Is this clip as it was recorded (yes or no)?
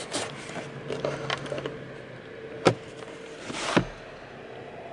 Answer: yes